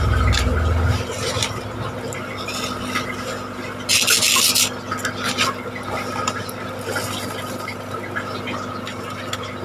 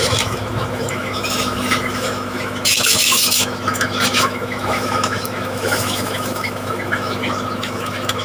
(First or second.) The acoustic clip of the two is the first